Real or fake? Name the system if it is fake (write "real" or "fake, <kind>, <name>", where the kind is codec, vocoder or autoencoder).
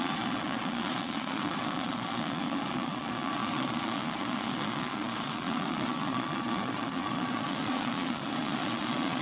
fake, vocoder, Vocos